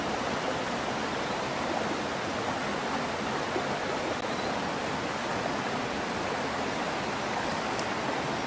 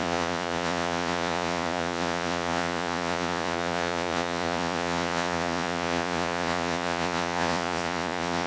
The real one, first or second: first